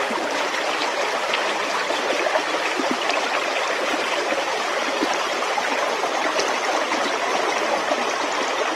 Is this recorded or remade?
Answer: remade